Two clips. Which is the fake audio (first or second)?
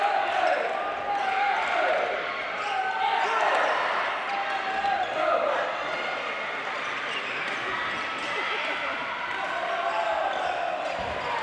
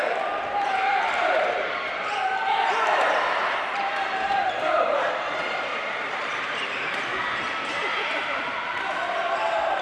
second